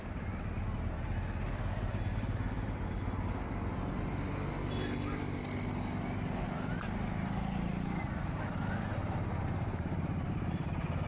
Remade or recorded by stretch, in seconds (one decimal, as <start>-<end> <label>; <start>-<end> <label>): 0.0-11.1 recorded